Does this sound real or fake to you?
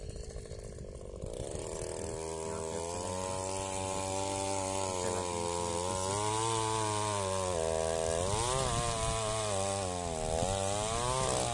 real